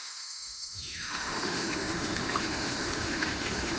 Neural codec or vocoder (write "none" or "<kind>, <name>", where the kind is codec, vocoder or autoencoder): autoencoder, DAC-VAE